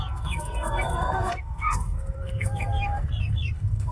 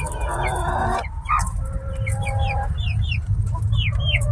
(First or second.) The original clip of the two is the second